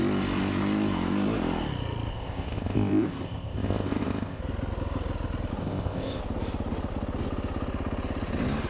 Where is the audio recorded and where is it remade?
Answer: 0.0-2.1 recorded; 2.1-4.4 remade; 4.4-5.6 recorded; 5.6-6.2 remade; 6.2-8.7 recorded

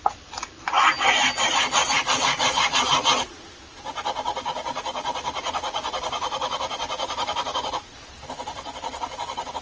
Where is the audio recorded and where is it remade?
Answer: 0.0-9.6 recorded

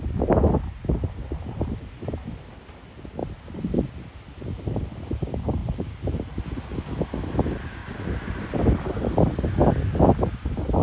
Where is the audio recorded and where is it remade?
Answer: 0.0-5.6 recorded; 5.6-6.4 remade; 6.4-7.8 recorded; 7.8-8.8 remade; 8.8-10.8 recorded

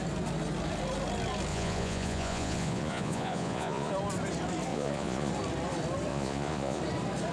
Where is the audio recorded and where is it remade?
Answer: 0.0-1.5 recorded; 1.5-3.9 remade; 3.9-4.7 recorded; 4.7-5.3 remade; 5.3-6.1 recorded; 6.1-6.8 remade; 6.8-7.3 recorded

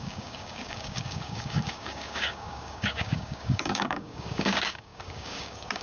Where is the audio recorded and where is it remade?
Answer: 0.0-5.8 remade

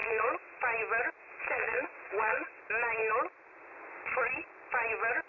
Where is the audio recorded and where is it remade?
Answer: 0.0-0.6 remade; 0.6-1.2 recorded; 1.2-2.6 remade; 2.6-5.3 recorded

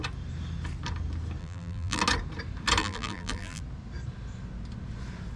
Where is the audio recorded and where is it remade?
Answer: 0.0-1.4 recorded; 1.4-2.0 remade; 2.0-2.8 recorded; 2.8-3.6 remade; 3.6-5.4 recorded

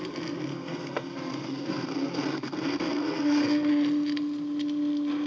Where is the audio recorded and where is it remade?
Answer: 0.0-0.5 recorded; 0.5-3.7 remade; 3.7-5.3 recorded